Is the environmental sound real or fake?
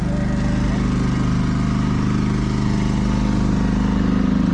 real